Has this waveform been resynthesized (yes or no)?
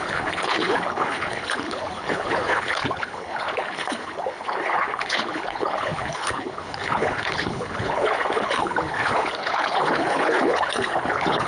yes